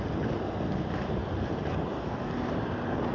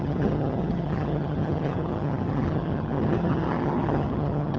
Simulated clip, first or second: second